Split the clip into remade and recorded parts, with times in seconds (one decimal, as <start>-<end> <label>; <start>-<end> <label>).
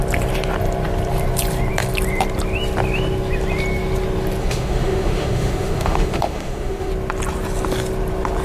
0.0-4.4 recorded; 4.4-6.9 remade; 6.9-8.4 recorded